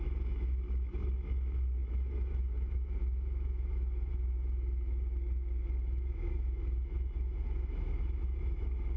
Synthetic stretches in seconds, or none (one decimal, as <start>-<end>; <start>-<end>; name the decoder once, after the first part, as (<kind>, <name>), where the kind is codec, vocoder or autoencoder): 0.0-9.0 (autoencoder, DAC-VAE)